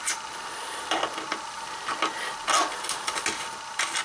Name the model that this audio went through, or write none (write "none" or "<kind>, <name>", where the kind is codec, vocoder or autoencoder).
none